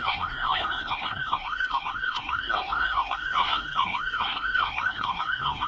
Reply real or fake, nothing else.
fake